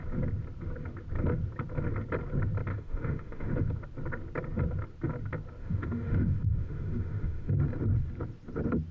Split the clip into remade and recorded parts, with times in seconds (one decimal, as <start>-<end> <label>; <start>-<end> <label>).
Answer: 0.0-2.7 recorded; 2.7-3.7 remade; 3.7-5.6 recorded; 5.6-7.5 remade; 7.5-8.9 recorded

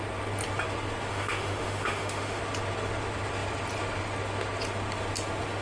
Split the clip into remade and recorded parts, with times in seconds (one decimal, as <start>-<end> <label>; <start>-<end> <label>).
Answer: 0.0-1.1 recorded; 1.1-2.4 remade; 2.4-5.6 recorded

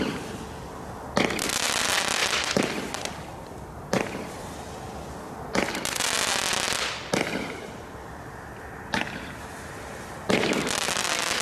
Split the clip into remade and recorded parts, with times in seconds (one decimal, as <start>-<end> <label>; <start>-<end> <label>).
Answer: 0.0-11.4 recorded

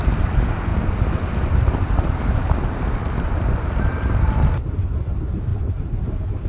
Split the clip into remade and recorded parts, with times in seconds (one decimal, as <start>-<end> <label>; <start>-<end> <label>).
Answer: 0.0-6.5 recorded

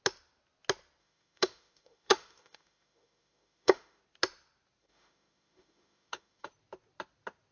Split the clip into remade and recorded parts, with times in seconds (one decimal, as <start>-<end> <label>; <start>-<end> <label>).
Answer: 0.0-1.0 recorded; 1.0-4.0 remade; 4.0-4.8 recorded; 4.8-6.5 remade; 6.5-7.5 recorded

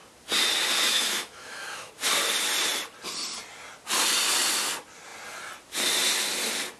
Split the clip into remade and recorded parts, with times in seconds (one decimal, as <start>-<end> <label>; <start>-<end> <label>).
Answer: 0.0-0.9 recorded; 0.9-1.9 remade; 1.9-6.8 recorded

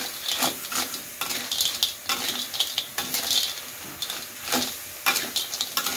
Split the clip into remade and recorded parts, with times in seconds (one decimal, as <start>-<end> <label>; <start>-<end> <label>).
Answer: 0.0-6.0 recorded

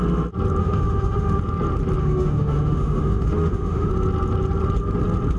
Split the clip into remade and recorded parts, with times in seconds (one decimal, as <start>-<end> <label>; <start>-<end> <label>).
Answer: 0.0-0.6 recorded; 0.6-1.4 remade; 1.4-2.0 recorded; 2.0-3.9 remade; 3.9-5.4 recorded